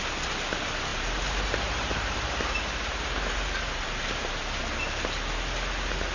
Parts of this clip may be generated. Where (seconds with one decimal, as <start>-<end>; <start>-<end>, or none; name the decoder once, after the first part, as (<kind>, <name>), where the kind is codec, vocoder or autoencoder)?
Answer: 0.9-4.6 (vocoder, BigVGAN v2)